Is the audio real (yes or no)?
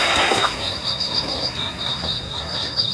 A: no